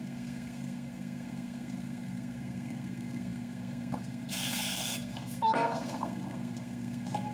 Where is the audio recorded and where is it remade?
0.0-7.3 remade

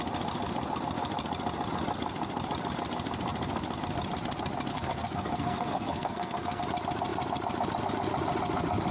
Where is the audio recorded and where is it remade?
0.0-4.7 recorded; 4.7-6.6 remade; 6.6-8.9 recorded

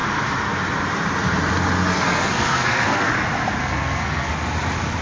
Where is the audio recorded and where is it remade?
0.0-1.9 recorded; 1.9-3.1 remade; 3.1-3.6 recorded; 3.6-4.3 remade; 4.3-5.0 recorded

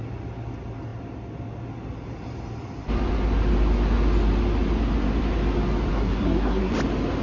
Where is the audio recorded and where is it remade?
0.0-5.9 recorded; 5.9-6.7 remade; 6.7-7.2 recorded

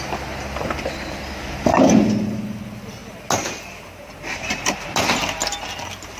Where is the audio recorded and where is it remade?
0.0-6.2 recorded

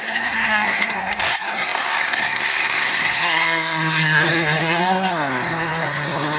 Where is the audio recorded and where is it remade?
0.0-6.4 remade

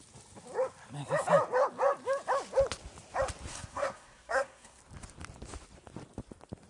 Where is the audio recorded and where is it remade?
0.0-3.5 recorded; 3.5-4.8 remade; 4.8-6.7 recorded